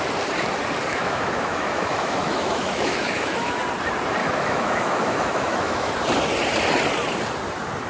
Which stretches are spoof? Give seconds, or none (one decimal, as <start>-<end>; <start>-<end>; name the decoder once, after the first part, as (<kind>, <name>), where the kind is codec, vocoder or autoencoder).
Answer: 0.9-3.6 (autoencoder, DAC-VAE); 4.2-5.9